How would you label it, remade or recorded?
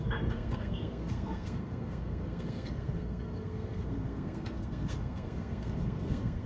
remade